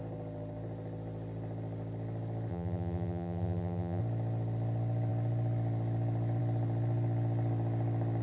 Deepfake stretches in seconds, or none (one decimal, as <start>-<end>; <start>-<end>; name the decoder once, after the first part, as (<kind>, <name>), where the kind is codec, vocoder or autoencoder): 2.5-4.0 (vocoder, BigVGAN v2)